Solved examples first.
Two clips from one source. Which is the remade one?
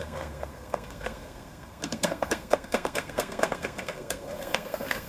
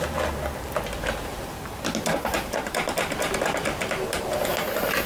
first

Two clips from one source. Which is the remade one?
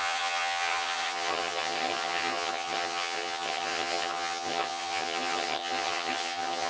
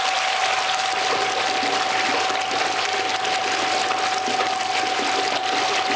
first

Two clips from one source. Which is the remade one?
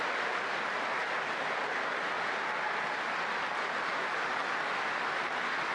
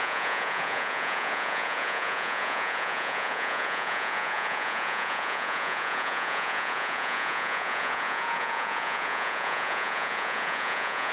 second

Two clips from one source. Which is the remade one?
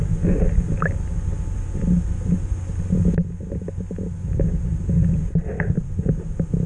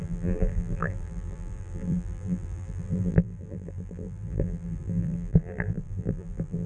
second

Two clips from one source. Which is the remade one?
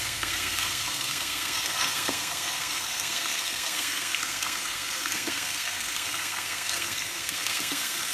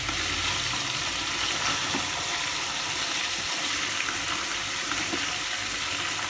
first